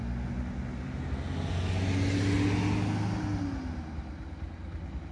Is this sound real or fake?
real